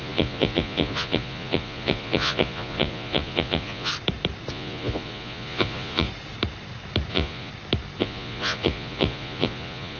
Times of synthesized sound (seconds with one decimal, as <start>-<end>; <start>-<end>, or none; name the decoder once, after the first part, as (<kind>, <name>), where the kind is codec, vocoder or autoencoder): 0.0-3.9 (vocoder, Vocos); 4.5-6.1; 7.1-7.5; 8.0-10.0